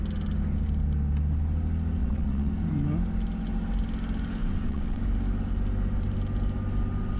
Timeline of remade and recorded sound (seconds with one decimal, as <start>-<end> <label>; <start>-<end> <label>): 0.0-2.0 recorded; 2.0-2.5 remade; 2.5-4.4 recorded; 4.4-5.0 remade; 5.0-7.2 recorded